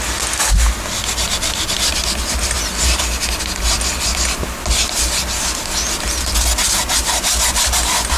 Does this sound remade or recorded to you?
recorded